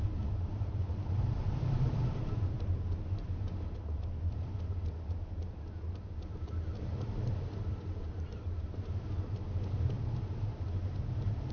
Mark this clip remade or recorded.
recorded